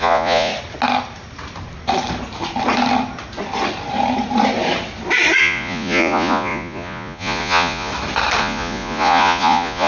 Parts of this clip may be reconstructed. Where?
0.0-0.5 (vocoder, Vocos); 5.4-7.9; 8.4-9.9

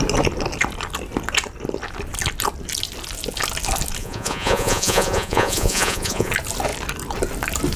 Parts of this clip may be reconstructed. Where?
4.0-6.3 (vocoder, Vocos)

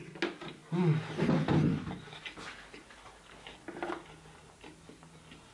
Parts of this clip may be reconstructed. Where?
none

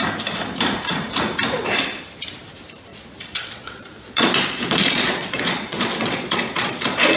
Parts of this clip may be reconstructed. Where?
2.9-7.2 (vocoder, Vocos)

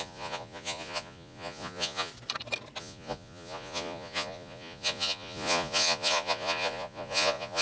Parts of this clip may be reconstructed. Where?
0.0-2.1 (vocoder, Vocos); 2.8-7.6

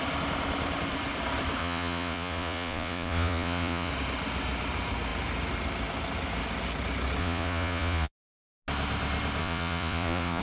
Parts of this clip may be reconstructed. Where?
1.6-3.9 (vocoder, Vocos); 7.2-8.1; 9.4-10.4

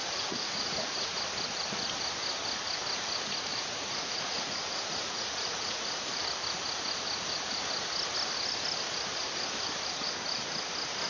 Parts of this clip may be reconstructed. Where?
0.0-1.2 (vocoder, Vocos); 3.5-6.1

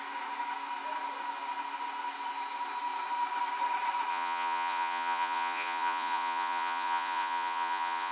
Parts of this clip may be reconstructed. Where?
4.1-8.1 (vocoder, Vocos)